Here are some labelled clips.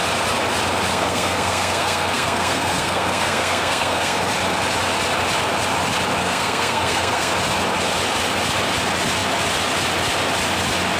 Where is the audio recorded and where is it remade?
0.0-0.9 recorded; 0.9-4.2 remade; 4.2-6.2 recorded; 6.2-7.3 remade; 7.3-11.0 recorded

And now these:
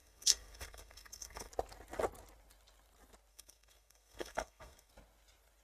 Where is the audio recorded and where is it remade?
0.0-1.5 remade; 1.5-3.3 recorded; 3.3-4.9 remade; 4.9-5.6 recorded